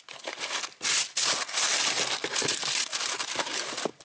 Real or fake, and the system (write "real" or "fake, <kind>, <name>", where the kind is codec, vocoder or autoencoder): real